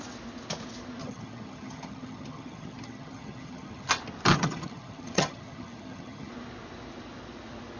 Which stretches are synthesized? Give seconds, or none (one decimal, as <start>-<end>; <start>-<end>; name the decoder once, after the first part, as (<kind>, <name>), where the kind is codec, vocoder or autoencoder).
1.0-3.9 (vocoder, HiFi-GAN); 4.3-6.3